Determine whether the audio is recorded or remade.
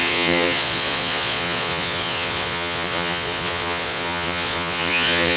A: remade